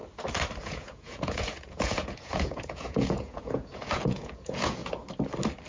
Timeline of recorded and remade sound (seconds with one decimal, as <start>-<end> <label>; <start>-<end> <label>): 0.0-0.6 recorded; 0.6-4.8 remade; 4.8-5.7 recorded